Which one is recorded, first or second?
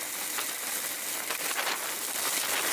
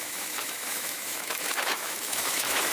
first